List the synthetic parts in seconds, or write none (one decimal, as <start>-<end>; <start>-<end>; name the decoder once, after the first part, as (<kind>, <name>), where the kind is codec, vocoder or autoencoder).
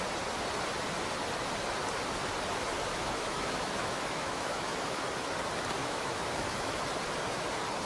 2.9-5.0 (autoencoder, DAC-VAE); 5.8-6.8